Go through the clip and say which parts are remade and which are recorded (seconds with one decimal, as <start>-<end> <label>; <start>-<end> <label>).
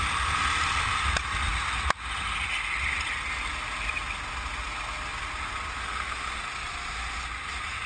0.0-5.8 recorded; 5.8-6.4 remade; 6.4-7.9 recorded